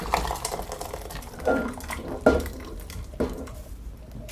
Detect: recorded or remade recorded